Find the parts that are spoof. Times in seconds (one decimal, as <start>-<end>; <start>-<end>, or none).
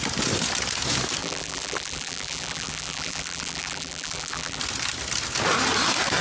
1.2-4.6